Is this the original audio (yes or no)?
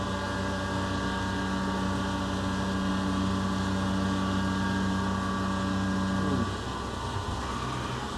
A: yes